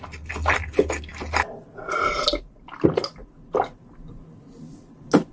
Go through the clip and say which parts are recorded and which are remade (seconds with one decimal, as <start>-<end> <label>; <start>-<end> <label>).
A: 0.0-5.3 recorded